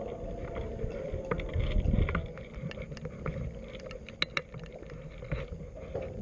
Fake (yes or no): no